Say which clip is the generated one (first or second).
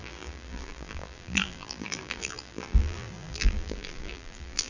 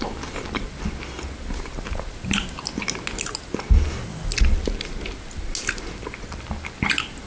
first